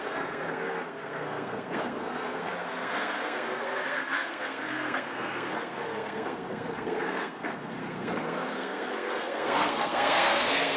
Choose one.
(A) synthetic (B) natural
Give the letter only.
A